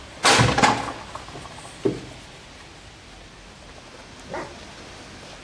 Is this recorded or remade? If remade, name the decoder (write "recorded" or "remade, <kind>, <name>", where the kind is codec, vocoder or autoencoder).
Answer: recorded